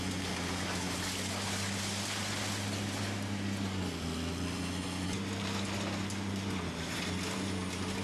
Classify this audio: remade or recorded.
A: recorded